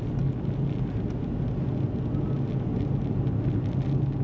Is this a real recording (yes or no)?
yes